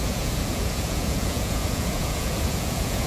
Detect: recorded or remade remade